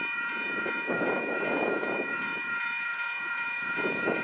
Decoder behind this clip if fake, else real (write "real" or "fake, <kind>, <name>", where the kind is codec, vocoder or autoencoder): fake, vocoder, Vocos